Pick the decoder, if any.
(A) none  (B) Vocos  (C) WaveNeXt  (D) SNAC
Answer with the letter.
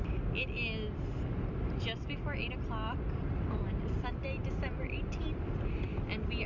A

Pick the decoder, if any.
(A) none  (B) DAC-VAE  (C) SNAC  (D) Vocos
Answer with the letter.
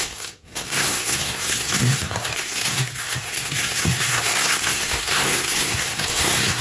C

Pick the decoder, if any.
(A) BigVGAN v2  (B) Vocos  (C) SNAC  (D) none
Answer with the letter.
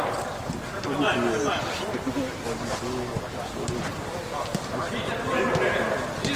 D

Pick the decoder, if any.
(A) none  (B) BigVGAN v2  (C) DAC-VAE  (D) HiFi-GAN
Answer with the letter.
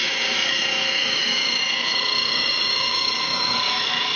C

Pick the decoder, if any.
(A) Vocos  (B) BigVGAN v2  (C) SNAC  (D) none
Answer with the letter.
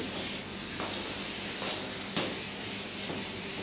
D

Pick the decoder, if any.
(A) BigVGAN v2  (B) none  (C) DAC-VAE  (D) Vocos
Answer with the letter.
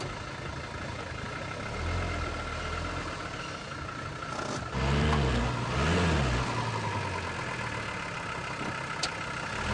B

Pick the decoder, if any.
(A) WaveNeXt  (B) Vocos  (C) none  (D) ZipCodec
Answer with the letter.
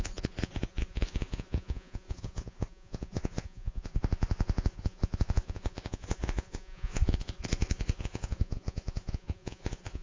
B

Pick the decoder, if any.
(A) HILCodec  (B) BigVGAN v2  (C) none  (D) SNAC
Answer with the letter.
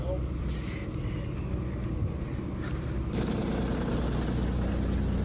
C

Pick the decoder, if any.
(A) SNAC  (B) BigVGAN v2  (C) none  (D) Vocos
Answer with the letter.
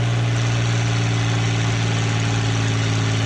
C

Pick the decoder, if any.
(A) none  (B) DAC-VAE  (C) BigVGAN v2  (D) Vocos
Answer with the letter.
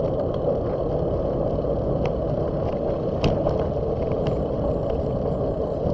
A